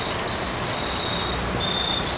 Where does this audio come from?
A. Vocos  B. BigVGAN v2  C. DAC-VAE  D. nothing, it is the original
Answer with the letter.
D